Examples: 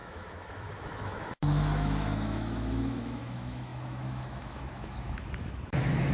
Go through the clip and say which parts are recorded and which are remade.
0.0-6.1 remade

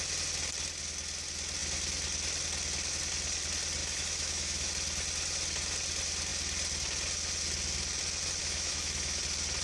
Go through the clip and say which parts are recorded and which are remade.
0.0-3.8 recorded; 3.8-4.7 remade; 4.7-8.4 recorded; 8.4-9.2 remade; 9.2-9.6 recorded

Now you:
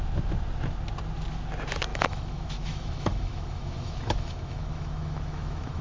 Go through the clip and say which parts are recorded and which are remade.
0.0-1.9 recorded; 1.9-5.8 remade

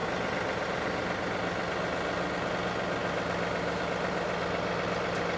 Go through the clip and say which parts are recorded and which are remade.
0.0-5.4 recorded

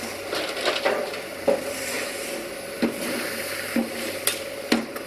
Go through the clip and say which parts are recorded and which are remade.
0.0-5.1 recorded

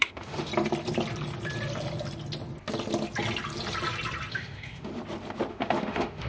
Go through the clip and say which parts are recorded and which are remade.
0.0-0.5 remade; 0.5-4.3 recorded; 4.3-4.9 remade; 4.9-5.5 recorded; 5.5-6.3 remade

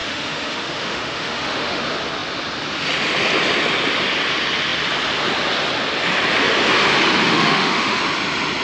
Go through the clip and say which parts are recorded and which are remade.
0.0-1.8 remade; 1.8-7.2 recorded; 7.2-8.0 remade; 8.0-8.6 recorded

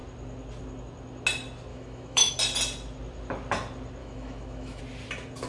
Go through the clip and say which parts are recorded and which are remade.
0.0-1.7 recorded; 1.7-2.3 remade; 2.3-4.0 recorded; 4.0-4.8 remade; 4.8-5.5 recorded